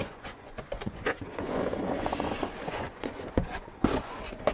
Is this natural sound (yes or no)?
no